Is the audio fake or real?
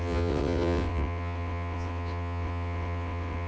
fake